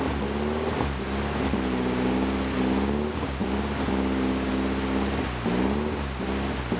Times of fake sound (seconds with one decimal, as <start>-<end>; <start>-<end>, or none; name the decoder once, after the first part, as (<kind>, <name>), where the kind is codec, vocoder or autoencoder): none